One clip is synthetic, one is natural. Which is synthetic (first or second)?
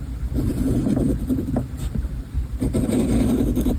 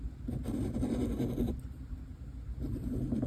first